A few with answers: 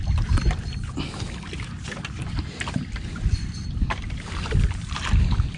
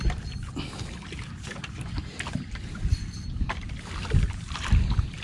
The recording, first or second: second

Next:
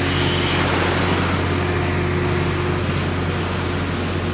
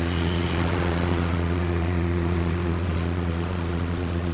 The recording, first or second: first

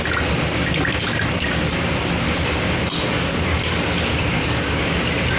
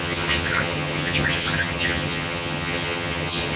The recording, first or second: first